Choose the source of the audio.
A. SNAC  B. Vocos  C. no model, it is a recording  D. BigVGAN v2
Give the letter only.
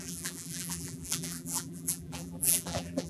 D